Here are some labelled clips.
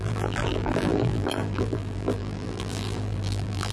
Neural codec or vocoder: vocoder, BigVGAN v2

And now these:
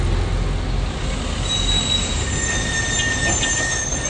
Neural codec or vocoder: none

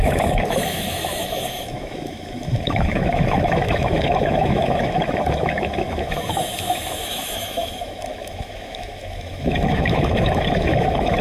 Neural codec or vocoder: autoencoder, DAC-VAE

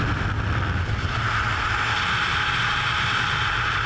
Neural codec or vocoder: none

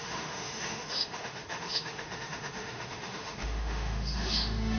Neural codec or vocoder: autoencoder, DAC-VAE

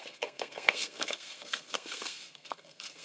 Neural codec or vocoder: codec, SNAC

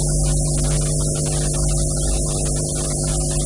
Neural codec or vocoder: none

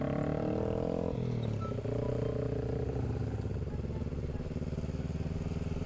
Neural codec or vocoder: none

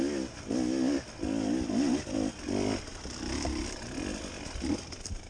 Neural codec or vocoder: none